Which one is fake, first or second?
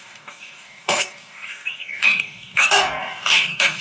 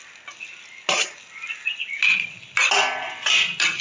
first